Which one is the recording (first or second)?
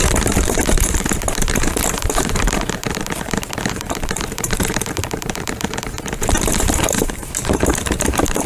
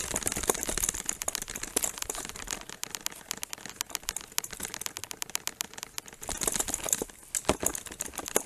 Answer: second